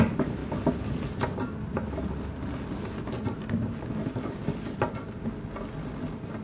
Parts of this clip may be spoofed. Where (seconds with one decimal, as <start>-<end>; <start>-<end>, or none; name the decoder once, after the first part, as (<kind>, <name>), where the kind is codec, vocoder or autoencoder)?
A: none

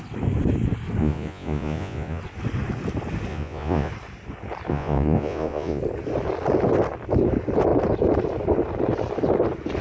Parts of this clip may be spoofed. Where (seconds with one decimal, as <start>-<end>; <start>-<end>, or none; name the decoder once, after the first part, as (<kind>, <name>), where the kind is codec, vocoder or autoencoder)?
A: 1.0-2.2 (vocoder, Vocos); 3.3-3.9; 4.7-5.8

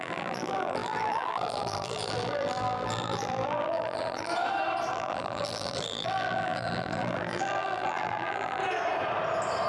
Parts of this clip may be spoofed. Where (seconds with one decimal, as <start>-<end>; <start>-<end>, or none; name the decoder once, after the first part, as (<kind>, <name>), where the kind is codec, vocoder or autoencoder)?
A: 0.0-4.3 (vocoder, BigVGAN v2); 4.9-8.6